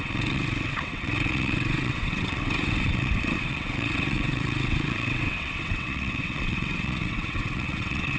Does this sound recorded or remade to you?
remade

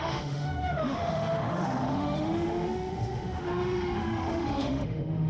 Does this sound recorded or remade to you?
remade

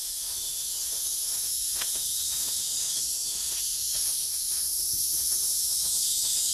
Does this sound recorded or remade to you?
remade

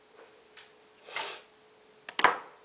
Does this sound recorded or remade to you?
recorded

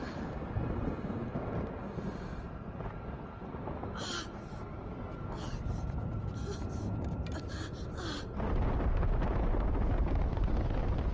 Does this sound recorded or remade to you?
recorded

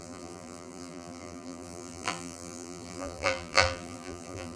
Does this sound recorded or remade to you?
remade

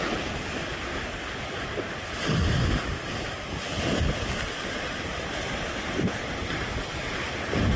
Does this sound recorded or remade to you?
recorded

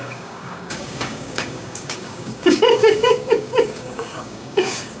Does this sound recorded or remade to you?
remade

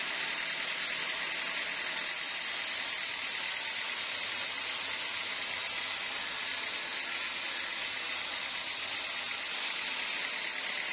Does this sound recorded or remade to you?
recorded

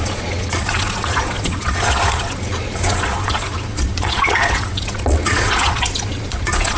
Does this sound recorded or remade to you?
remade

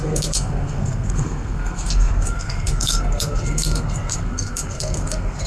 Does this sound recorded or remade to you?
remade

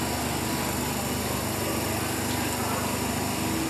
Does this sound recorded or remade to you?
recorded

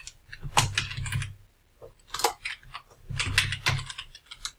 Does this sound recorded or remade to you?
recorded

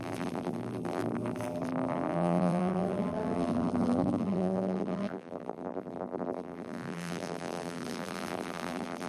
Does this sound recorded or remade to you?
remade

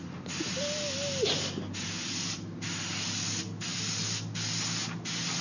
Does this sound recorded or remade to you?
recorded